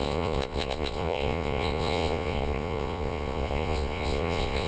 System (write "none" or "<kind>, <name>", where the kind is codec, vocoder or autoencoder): vocoder, Vocos